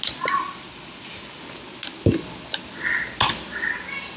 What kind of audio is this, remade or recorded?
recorded